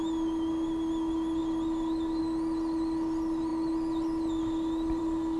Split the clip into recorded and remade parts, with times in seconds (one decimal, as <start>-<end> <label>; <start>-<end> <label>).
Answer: 0.0-5.4 recorded

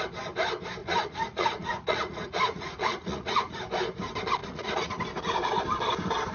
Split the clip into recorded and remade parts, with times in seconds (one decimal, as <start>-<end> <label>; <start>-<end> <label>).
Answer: 0.0-0.8 recorded; 0.8-3.6 remade; 3.6-4.4 recorded; 4.4-5.0 remade; 5.0-6.3 recorded